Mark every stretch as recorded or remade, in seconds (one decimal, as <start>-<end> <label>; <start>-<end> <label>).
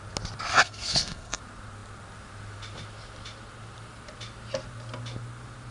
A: 0.0-0.6 recorded; 0.6-1.4 remade; 1.4-5.7 recorded